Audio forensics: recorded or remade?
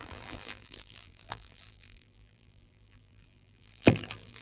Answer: remade